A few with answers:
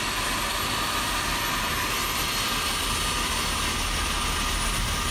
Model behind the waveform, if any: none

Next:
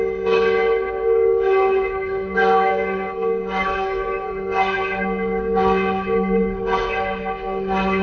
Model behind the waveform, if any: codec, SNAC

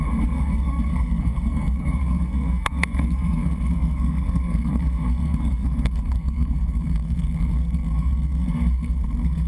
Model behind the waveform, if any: codec, SNAC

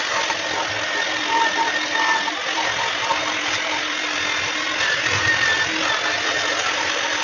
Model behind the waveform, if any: none